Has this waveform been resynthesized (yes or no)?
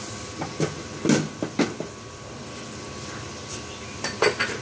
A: no